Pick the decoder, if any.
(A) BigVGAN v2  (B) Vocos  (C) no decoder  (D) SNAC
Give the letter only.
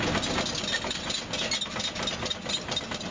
C